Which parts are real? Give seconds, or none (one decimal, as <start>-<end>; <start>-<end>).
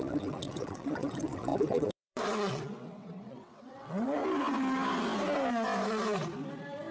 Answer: 4.2-6.9